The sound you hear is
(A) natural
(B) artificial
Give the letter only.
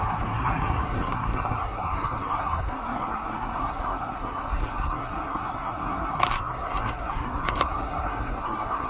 B